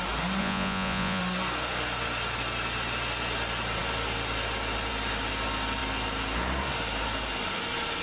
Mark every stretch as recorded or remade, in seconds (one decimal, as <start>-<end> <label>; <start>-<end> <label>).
0.0-0.4 recorded; 0.4-1.2 remade; 1.2-8.0 recorded